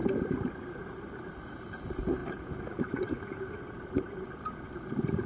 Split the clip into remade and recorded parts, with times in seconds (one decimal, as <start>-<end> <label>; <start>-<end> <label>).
0.0-5.3 recorded